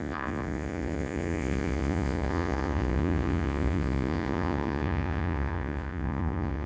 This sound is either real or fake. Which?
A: fake